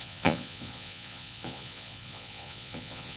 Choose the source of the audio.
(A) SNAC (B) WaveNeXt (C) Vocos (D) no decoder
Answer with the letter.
C